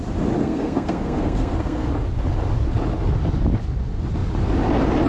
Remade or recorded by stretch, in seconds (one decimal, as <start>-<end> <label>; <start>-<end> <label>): 0.0-0.4 recorded; 0.4-1.9 remade; 1.9-5.1 recorded